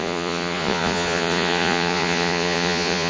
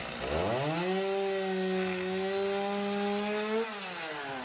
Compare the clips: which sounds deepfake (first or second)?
first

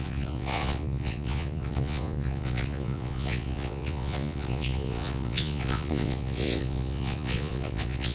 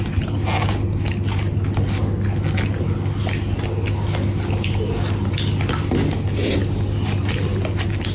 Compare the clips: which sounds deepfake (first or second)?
first